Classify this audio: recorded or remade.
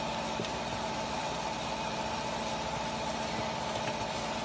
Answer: recorded